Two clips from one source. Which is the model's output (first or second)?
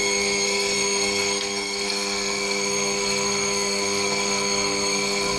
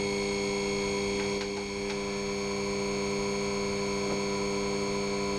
first